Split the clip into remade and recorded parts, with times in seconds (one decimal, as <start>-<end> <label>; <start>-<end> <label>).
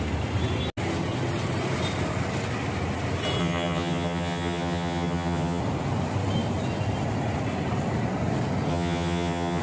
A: 0.0-3.4 recorded; 3.4-5.6 remade; 5.6-8.7 recorded; 8.7-9.6 remade